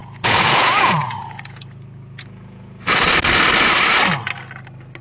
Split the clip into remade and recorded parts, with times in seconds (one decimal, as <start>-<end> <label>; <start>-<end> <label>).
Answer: 0.0-3.0 remade; 3.0-5.0 recorded